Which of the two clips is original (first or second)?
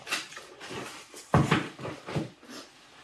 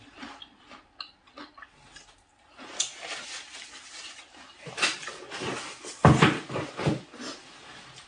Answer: second